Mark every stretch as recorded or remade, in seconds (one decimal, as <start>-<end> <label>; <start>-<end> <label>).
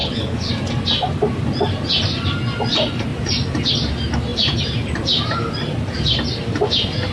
0.0-0.5 remade; 0.5-7.1 recorded